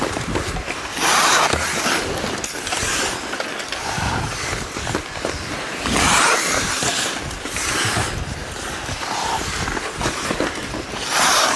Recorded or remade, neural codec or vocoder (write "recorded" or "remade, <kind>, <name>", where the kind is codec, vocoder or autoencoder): recorded